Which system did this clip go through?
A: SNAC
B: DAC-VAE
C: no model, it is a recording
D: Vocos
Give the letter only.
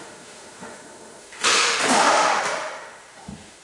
B